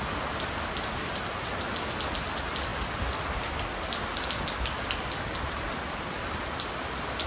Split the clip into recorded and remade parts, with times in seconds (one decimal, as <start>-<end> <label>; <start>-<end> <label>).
0.0-7.3 recorded